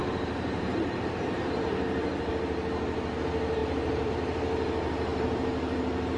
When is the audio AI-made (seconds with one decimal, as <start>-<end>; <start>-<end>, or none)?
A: 0.0-2.3; 3.6-4.1; 5.1-6.2